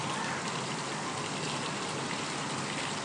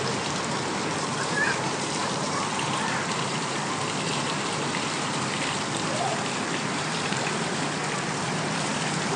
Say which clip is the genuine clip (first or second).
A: first